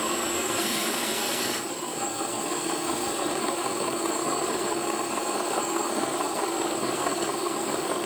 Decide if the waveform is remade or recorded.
remade